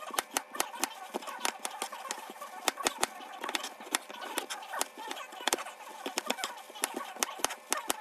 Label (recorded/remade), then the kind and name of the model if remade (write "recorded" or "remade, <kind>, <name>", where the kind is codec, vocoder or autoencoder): recorded